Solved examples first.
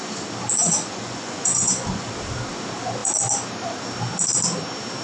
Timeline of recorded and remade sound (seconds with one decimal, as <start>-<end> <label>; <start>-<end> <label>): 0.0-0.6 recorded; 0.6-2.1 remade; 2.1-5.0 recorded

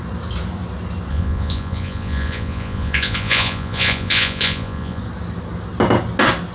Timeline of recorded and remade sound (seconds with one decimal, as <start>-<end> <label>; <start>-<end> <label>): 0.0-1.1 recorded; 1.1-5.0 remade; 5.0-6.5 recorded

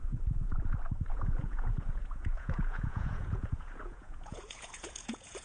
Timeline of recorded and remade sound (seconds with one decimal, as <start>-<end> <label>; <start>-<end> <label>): 0.0-0.5 remade; 0.5-1.1 recorded; 1.1-5.4 remade

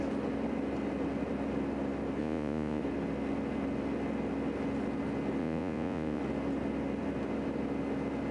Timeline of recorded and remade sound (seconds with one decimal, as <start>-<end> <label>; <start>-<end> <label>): 0.0-2.2 recorded; 2.2-2.8 remade; 2.8-5.4 recorded; 5.4-6.2 remade; 6.2-8.3 recorded

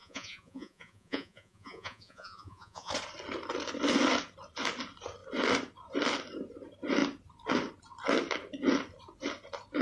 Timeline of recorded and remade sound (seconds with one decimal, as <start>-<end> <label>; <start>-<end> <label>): 0.0-2.9 remade; 2.9-9.8 recorded